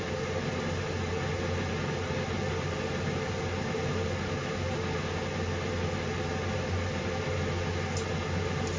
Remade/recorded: recorded